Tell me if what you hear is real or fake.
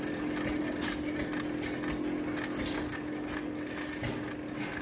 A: real